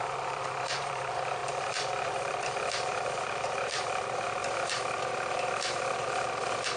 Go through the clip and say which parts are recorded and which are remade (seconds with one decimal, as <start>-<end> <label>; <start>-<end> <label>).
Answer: 0.0-4.4 remade; 4.4-5.1 recorded; 5.1-6.8 remade